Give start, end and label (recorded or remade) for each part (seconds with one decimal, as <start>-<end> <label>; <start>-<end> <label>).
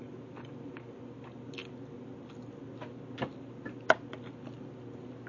0.0-5.3 recorded